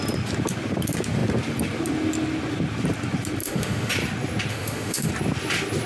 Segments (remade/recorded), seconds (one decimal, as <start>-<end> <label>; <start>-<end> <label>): 0.0-3.4 recorded; 3.4-3.9 remade; 3.9-4.5 recorded; 4.5-5.1 remade; 5.1-5.9 recorded